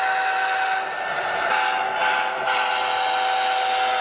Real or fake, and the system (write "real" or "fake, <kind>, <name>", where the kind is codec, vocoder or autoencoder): real